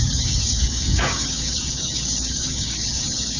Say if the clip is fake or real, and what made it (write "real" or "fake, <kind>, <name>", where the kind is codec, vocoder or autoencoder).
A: fake, codec, DAC